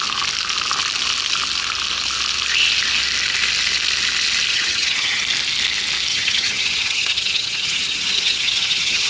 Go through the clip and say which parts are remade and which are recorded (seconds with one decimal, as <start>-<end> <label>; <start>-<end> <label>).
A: 0.0-4.5 recorded; 4.5-5.2 remade; 5.2-6.1 recorded; 6.1-9.1 remade